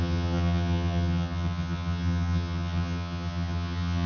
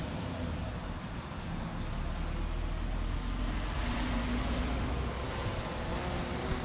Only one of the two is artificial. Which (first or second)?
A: first